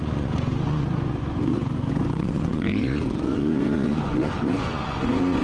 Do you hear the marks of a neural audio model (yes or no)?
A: yes